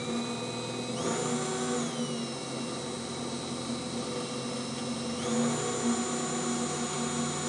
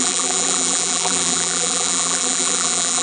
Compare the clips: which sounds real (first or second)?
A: first